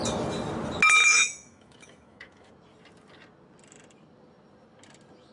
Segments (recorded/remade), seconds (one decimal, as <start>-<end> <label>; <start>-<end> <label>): 0.0-1.0 recorded; 1.0-2.5 remade; 2.5-5.3 recorded